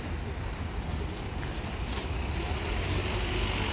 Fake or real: real